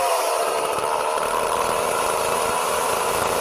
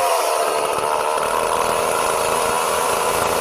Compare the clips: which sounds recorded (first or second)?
second